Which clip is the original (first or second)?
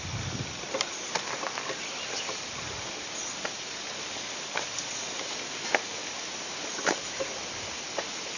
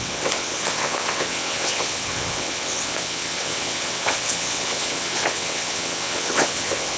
first